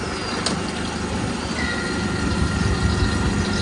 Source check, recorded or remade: recorded